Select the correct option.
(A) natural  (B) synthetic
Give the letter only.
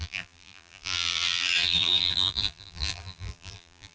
B